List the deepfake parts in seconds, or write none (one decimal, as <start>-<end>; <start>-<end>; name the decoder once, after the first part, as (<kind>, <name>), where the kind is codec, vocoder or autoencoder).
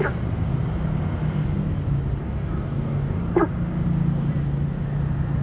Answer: 2.2-3.2 (codec, DAC)